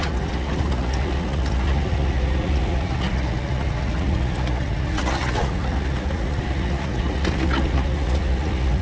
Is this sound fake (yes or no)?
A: yes